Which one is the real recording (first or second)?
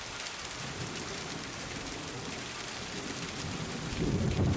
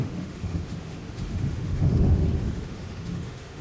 first